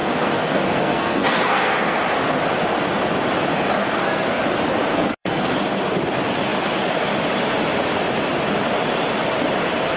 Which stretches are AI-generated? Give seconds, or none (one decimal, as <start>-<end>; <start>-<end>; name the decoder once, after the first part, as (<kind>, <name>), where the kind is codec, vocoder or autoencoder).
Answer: 0.0-2.0 (codec, SNAC); 3.8-4.4; 4.9-5.5

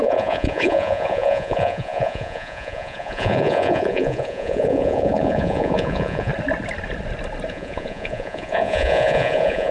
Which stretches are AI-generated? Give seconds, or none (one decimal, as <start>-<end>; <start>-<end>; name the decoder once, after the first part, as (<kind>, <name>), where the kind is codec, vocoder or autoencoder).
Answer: 0.0-6.3 (vocoder, Vocos); 7.5-9.7

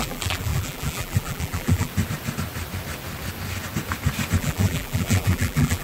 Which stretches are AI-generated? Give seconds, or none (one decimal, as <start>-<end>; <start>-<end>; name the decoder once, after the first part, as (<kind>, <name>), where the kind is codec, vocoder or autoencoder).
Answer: 0.0-1.9 (vocoder, BigVGAN v2); 4.4-5.8

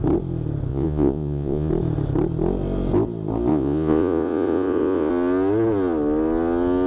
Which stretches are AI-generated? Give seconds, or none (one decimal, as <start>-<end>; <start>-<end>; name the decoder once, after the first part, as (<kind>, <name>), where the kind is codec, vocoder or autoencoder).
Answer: 0.7-1.7 (vocoder, Vocos); 3.5-5.1

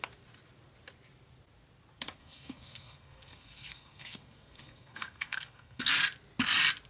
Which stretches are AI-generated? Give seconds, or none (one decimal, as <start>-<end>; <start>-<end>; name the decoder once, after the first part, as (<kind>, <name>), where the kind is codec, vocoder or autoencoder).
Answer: 2.2-5.9 (codec, SNAC)

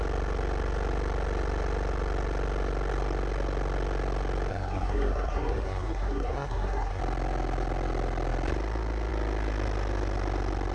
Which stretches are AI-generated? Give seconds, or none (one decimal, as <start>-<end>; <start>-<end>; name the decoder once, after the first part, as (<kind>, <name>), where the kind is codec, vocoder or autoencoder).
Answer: 4.5-7.0 (codec, SNAC)

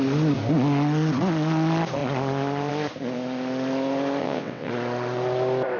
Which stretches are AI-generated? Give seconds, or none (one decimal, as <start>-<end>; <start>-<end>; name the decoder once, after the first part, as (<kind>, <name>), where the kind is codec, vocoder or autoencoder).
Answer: 4.2-4.7 (vocoder, WaveNeXt)